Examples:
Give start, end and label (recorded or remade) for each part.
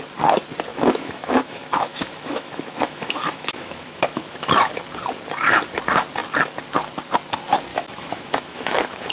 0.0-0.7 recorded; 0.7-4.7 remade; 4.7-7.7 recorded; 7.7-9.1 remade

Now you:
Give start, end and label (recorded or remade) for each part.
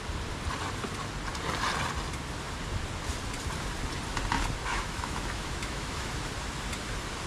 0.0-4.7 recorded; 4.7-6.1 remade; 6.1-7.3 recorded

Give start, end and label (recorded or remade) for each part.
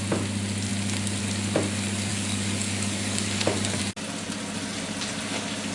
0.0-2.1 recorded; 2.1-3.8 remade; 3.8-5.7 recorded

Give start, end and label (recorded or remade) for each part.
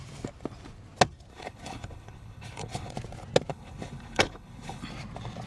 0.0-1.3 recorded; 1.3-2.9 remade; 2.9-3.5 recorded; 3.5-4.8 remade; 4.8-5.5 recorded